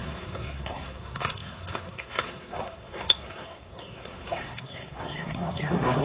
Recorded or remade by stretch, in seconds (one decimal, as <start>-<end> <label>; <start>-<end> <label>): 0.0-6.0 remade